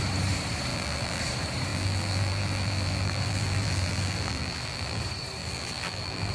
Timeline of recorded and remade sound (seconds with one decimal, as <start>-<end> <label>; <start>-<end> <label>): 0.0-0.7 recorded; 0.7-1.2 remade; 1.2-1.7 recorded; 1.7-5.0 remade; 5.0-5.4 recorded; 5.4-6.3 remade